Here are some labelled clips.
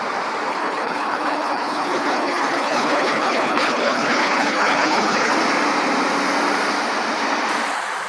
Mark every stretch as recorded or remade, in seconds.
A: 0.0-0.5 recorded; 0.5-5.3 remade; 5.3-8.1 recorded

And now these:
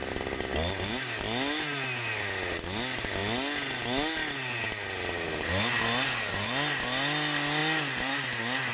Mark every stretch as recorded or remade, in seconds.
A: 0.0-8.7 recorded

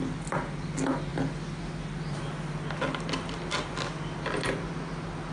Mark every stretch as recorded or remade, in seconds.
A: 0.0-5.3 recorded